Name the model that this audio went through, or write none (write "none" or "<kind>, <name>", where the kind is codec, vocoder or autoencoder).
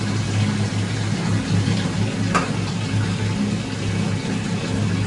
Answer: none